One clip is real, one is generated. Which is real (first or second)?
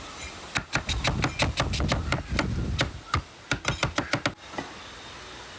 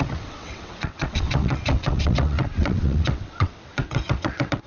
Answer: first